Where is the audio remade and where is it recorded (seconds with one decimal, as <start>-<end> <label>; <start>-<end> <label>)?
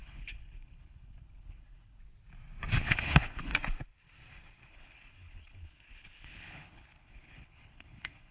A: 0.0-2.0 remade; 2.0-2.8 recorded; 2.8-3.5 remade; 3.5-4.7 recorded; 4.7-8.3 remade